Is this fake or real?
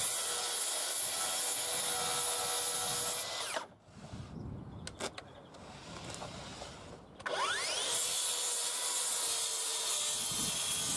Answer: real